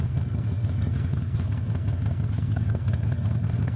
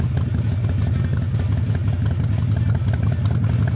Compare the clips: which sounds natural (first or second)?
second